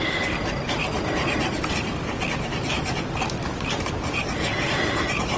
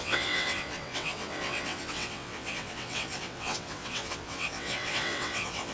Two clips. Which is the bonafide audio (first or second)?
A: first